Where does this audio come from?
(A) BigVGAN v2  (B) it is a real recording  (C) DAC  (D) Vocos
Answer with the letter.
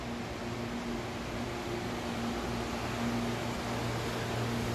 B